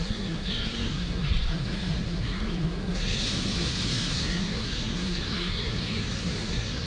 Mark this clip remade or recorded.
remade